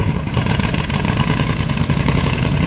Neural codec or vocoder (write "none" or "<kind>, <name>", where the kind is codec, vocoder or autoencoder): vocoder, Vocos